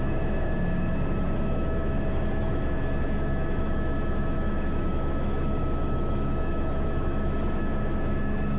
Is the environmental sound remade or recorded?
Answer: remade